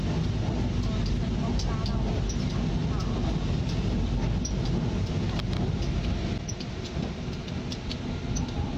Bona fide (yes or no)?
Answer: yes